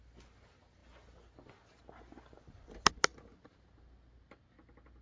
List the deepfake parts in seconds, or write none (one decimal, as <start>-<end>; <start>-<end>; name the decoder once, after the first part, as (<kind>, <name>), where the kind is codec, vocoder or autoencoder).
none